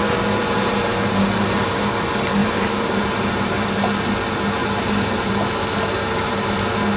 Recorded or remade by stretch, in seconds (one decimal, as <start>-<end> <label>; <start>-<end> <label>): 0.0-0.4 recorded; 0.4-1.7 remade; 1.7-2.4 recorded; 2.4-3.5 remade; 3.5-4.6 recorded; 4.6-5.3 remade; 5.3-7.0 recorded